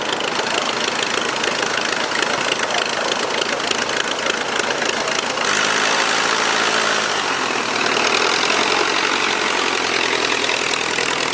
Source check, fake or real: real